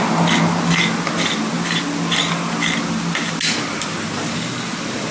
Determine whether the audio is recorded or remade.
recorded